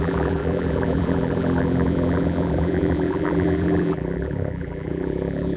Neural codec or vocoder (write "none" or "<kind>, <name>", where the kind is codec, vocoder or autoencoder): vocoder, BigVGAN v2